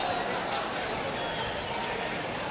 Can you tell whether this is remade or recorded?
recorded